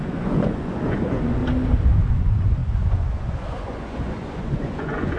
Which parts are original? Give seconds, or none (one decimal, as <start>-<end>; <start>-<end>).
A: 1.4-2.1